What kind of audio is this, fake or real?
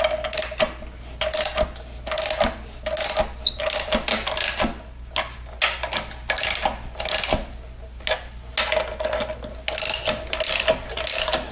real